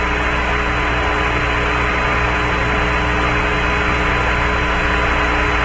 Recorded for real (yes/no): yes